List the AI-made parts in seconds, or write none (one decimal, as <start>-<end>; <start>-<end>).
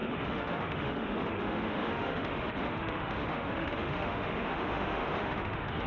0.0-5.9